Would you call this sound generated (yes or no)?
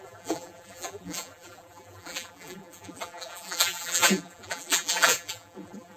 yes